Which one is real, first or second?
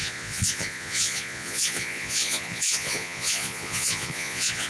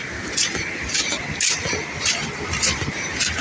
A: second